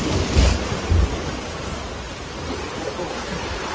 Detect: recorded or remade recorded